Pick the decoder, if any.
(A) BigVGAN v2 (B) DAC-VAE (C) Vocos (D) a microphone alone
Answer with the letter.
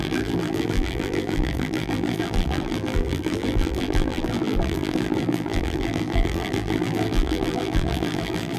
A